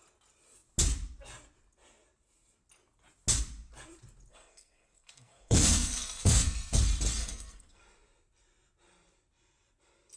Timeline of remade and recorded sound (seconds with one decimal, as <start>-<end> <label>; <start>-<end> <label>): 0.0-4.3 recorded; 4.3-6.8 remade; 6.8-7.2 recorded; 7.2-7.8 remade; 7.8-10.2 recorded